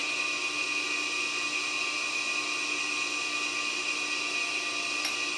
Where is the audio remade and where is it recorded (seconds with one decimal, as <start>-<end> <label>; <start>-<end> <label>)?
0.0-5.4 recorded